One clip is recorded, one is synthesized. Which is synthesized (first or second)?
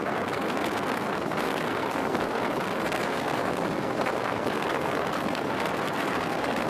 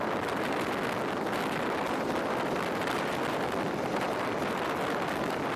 first